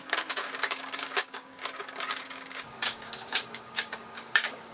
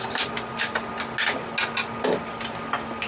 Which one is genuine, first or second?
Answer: second